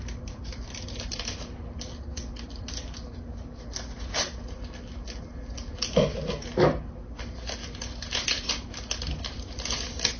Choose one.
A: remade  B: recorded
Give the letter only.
B